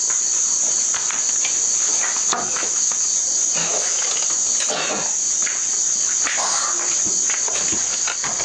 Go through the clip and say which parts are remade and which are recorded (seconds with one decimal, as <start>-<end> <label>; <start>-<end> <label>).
0.0-2.1 recorded; 2.1-2.9 remade; 2.9-3.6 recorded; 3.6-4.1 remade; 4.1-8.4 recorded